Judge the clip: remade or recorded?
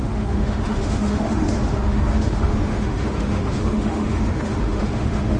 remade